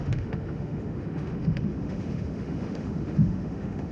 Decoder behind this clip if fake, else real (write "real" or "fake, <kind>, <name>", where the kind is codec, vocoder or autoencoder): fake, autoencoder, DAC-VAE